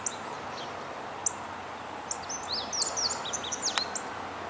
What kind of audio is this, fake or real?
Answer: real